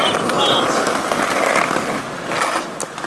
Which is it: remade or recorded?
recorded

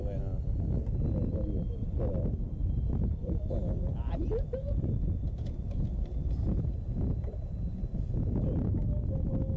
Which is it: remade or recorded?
recorded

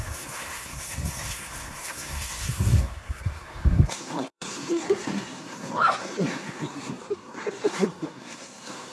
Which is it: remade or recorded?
remade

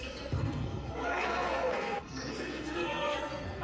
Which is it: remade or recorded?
remade